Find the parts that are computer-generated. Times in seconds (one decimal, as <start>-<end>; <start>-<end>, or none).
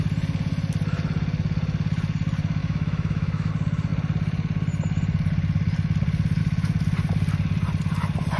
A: 2.6-3.5